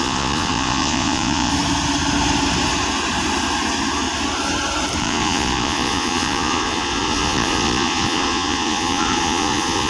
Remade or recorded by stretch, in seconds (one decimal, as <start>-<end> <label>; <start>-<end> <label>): 0.0-1.5 remade; 1.5-5.0 recorded; 5.0-9.9 remade

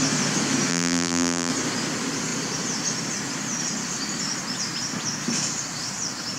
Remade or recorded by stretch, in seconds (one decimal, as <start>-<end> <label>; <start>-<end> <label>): 0.0-0.7 recorded; 0.7-1.5 remade; 1.5-6.4 recorded

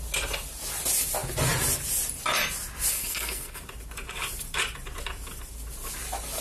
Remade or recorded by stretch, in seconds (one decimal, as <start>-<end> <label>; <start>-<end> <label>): 0.0-2.9 recorded; 2.9-3.6 remade; 3.6-6.4 recorded

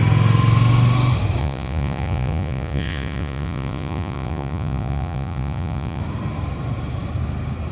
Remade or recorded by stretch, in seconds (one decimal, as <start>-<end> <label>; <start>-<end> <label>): 0.0-1.4 recorded; 1.4-6.0 remade; 6.0-7.7 recorded